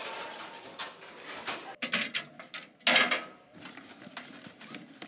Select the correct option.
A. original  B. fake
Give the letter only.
A